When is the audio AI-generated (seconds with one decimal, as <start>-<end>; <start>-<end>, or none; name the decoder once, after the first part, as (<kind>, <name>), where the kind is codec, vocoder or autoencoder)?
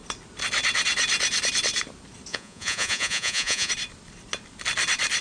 2.3-3.7 (vocoder, Vocos)